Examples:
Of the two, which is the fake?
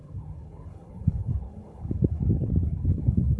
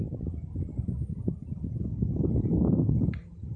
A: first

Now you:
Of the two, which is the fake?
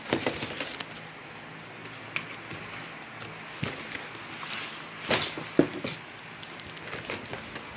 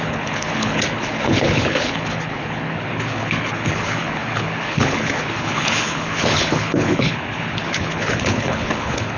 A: second